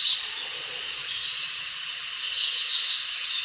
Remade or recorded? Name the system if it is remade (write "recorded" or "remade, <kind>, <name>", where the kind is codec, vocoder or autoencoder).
remade, vocoder, Vocos